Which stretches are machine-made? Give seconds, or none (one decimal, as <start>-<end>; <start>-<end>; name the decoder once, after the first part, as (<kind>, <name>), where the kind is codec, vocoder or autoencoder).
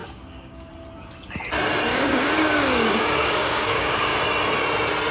0.0-0.7 (codec, DAC); 1.9-4.2